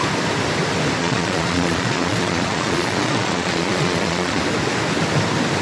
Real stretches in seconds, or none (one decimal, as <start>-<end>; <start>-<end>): 0.0-1.0; 4.4-5.6